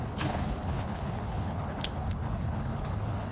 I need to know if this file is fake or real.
fake